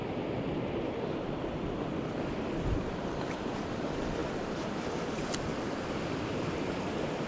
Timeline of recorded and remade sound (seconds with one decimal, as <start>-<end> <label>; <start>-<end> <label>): 0.0-7.3 remade